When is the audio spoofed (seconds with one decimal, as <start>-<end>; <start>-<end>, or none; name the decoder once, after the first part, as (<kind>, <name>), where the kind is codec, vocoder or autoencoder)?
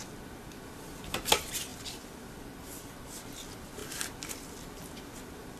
none